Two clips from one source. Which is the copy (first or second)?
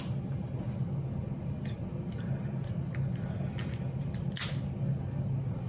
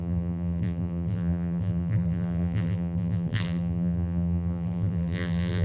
second